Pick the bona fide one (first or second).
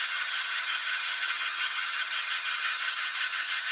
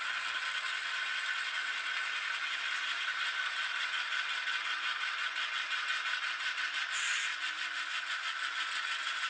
second